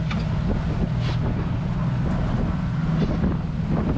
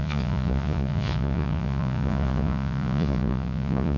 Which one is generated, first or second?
second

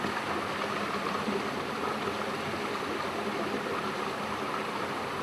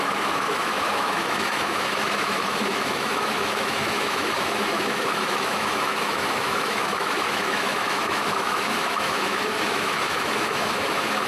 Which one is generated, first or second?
second